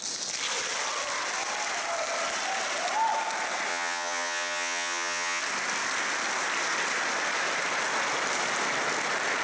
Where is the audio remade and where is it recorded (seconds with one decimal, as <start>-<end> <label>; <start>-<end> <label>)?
0.0-3.7 recorded; 3.7-5.4 remade; 5.4-9.4 recorded